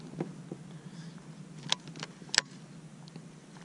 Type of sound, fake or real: real